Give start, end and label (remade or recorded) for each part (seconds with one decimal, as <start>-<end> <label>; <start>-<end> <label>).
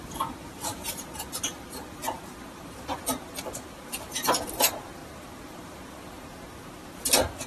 0.0-7.5 remade